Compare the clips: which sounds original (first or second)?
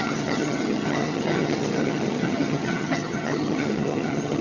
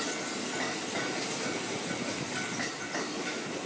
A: second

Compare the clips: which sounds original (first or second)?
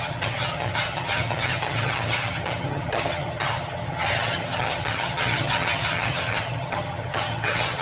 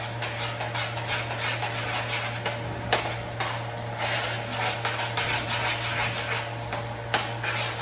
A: second